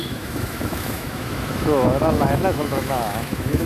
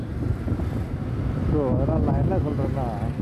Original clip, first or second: second